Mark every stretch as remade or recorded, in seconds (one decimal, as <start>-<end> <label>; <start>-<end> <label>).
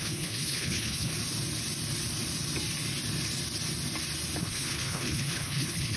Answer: 0.0-1.1 remade; 1.1-4.4 recorded; 4.4-6.0 remade